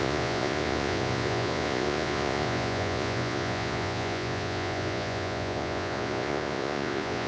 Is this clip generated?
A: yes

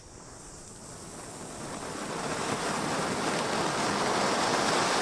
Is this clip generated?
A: no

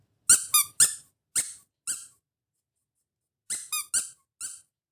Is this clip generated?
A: no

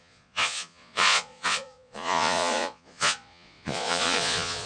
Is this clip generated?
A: yes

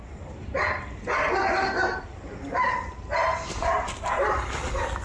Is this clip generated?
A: no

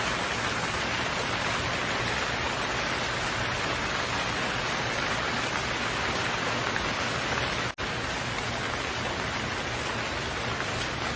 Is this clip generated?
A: no